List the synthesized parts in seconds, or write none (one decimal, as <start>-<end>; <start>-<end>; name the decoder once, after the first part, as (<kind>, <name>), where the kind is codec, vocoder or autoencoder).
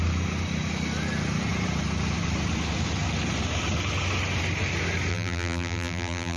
5.1-6.4 (vocoder, BigVGAN v2)